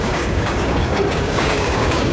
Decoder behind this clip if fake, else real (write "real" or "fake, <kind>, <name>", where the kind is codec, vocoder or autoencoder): fake, codec, DAC